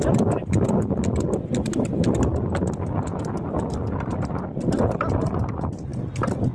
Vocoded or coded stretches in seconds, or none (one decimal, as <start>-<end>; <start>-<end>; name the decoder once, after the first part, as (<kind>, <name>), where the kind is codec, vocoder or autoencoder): none